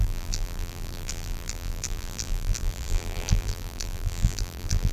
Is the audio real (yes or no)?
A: no